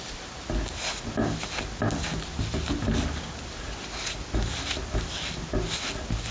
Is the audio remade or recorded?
recorded